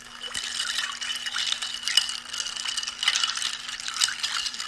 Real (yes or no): yes